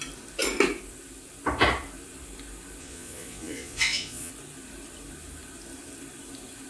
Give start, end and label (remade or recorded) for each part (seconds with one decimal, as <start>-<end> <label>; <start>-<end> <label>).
0.0-2.8 recorded; 2.8-4.3 remade; 4.3-6.7 recorded